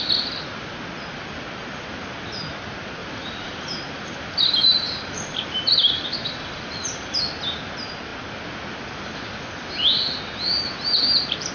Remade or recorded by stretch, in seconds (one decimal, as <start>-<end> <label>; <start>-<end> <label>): 0.0-3.0 recorded; 3.0-6.6 remade; 6.6-11.5 recorded